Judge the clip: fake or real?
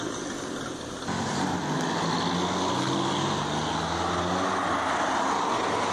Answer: real